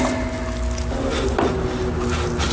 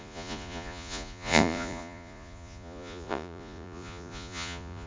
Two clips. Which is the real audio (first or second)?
first